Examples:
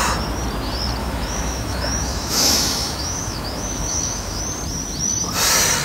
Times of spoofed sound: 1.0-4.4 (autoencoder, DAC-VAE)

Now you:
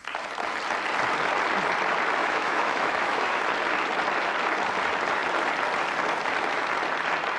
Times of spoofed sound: 2.2-3.4 (autoencoder, DAC-VAE)